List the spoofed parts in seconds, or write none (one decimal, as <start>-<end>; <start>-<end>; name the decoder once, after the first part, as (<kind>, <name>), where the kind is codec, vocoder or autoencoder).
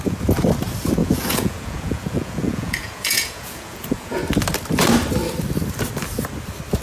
1.0-4.2 (vocoder, Vocos)